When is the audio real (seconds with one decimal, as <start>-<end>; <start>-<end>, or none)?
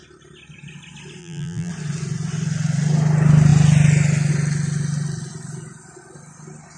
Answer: 0.0-1.2; 1.7-6.8